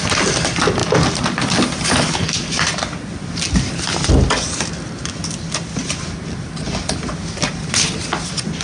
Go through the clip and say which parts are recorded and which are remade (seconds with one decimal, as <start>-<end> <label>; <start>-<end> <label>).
0.0-7.2 recorded; 7.2-7.9 remade; 7.9-8.6 recorded